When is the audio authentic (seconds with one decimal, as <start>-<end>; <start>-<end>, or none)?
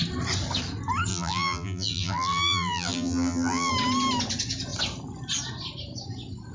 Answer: 0.0-1.1; 3.7-6.5